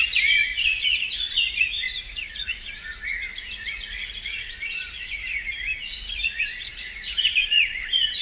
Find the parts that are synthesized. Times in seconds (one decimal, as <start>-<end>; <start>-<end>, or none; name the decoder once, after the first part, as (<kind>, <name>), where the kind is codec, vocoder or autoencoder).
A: 0.0-8.2 (vocoder, Vocos)

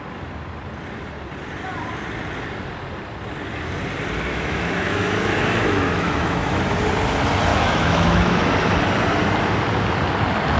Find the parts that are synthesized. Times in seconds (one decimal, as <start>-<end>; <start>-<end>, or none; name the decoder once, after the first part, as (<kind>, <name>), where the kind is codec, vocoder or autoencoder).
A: 4.3-6.6 (autoencoder, DAC-VAE); 7.5-8.5

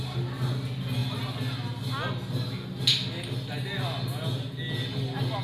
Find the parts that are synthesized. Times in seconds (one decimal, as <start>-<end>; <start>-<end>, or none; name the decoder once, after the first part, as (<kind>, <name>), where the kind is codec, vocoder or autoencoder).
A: none

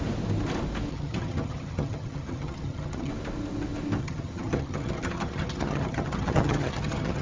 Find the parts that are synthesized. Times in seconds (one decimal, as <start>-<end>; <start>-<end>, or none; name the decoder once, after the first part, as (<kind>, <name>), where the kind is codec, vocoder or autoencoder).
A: 0.9-3.1 (vocoder, HiFi-GAN); 4.0-7.2

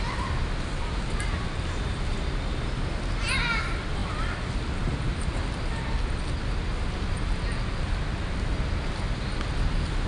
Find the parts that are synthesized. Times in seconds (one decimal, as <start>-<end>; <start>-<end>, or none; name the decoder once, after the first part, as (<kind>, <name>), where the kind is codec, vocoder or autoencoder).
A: none